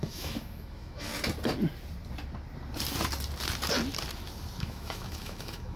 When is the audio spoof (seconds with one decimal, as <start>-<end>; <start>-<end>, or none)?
0.0-1.1; 4.6-5.8